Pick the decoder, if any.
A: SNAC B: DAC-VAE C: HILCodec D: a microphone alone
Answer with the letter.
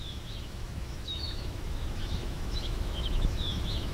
B